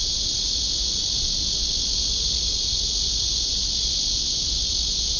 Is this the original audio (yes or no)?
yes